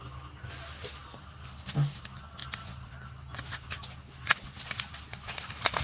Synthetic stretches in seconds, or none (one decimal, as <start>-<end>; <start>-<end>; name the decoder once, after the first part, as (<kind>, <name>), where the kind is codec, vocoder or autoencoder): 2.4-5.0 (vocoder, BigVGAN v2)